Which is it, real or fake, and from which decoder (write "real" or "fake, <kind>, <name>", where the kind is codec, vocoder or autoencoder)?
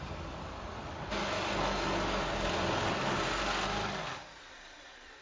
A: real